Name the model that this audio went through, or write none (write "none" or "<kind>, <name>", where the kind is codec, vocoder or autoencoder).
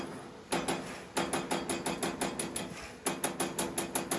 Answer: none